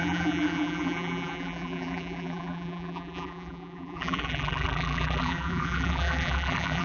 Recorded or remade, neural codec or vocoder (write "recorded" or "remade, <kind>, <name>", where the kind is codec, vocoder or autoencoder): remade, vocoder, BigVGAN v2